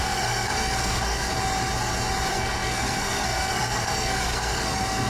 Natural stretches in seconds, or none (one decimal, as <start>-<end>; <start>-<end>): 1.3-2.3